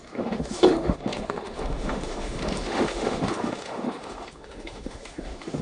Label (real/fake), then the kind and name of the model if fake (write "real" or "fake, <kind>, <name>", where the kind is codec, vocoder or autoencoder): fake, autoencoder, DAC-VAE